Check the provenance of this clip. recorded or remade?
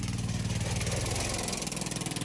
recorded